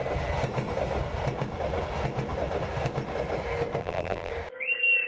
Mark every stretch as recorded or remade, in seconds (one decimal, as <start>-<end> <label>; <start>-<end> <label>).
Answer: 0.0-3.8 recorded; 3.8-4.3 remade; 4.3-5.1 recorded